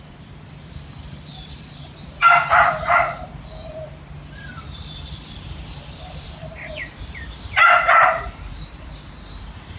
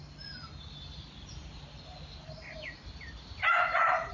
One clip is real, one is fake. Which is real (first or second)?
second